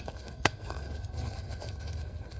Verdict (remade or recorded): remade